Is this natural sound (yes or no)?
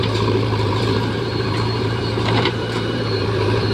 no